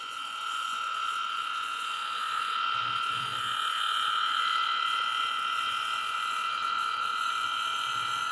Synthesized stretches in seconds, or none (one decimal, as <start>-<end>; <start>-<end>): 0.0-8.3